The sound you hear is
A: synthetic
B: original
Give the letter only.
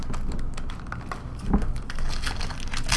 B